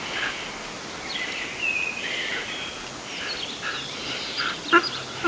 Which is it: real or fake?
real